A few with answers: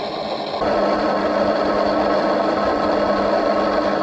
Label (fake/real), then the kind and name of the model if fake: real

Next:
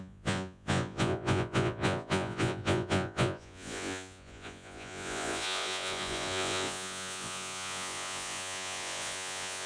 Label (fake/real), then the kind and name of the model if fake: fake, vocoder, Vocos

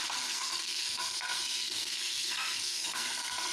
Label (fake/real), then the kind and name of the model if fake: fake, codec, SNAC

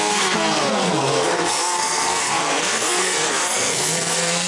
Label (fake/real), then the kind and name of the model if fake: fake, codec, SNAC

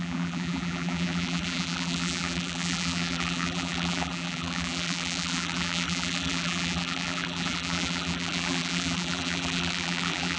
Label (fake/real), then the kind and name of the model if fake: fake, vocoder, BigVGAN v2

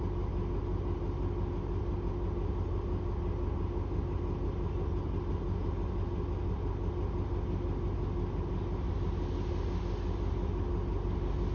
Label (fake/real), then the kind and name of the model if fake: real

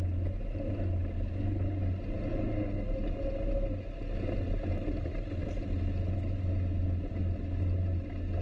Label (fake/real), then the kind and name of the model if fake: real